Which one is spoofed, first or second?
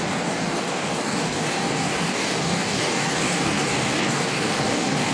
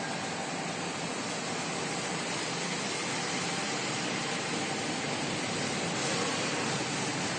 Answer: first